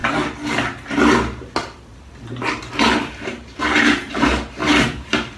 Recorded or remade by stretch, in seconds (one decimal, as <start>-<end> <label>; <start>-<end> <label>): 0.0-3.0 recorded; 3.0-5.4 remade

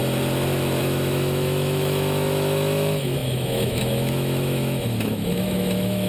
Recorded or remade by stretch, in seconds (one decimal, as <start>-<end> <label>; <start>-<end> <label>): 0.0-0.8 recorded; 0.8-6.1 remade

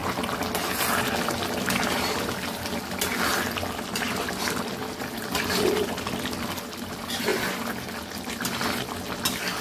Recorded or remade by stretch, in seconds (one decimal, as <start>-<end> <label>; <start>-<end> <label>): 0.0-9.6 recorded

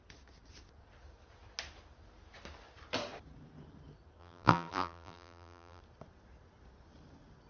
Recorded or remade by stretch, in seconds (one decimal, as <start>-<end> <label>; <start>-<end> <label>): 0.0-4.2 recorded; 4.2-5.8 remade; 5.8-7.5 recorded